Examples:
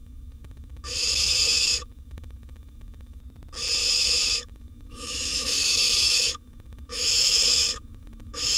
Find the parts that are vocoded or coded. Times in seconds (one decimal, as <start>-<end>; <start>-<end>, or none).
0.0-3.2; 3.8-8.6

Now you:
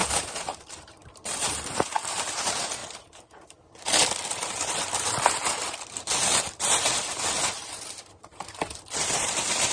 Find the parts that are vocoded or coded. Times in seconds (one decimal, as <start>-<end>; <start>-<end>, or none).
0.0-2.8; 8.1-9.7

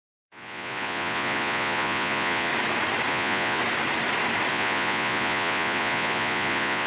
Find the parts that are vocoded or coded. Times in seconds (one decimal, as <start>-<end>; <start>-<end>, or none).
0.0-2.5; 3.1-3.6; 4.5-6.9